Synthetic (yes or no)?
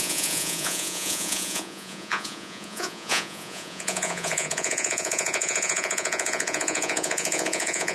yes